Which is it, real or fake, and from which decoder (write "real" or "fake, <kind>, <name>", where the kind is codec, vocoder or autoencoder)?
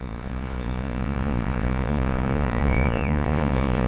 fake, vocoder, Vocos